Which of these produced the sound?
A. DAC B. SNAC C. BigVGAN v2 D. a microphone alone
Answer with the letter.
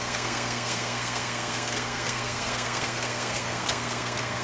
B